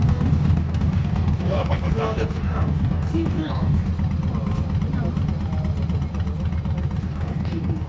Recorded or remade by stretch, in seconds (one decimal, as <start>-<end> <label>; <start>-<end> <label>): 0.0-3.9 remade; 3.9-7.0 recorded; 7.0-7.9 remade